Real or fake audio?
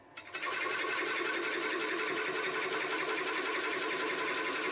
real